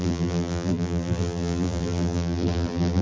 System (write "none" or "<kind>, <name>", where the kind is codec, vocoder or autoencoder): vocoder, BigVGAN v2